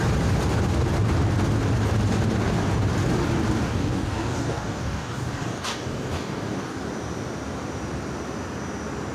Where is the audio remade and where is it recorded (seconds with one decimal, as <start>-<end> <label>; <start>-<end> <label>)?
0.0-3.6 recorded; 3.6-6.8 remade; 6.8-9.1 recorded